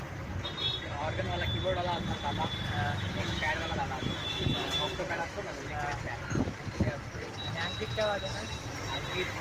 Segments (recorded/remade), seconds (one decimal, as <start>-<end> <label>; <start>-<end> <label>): 0.0-3.2 recorded; 3.2-5.6 remade; 5.6-9.4 recorded